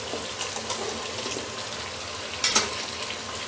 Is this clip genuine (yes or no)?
yes